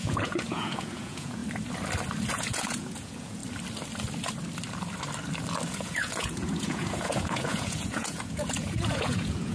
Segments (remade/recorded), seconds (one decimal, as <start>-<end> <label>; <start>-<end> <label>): 0.0-1.4 remade; 1.4-2.3 recorded; 2.3-3.4 remade; 3.4-5.7 recorded; 5.7-9.5 remade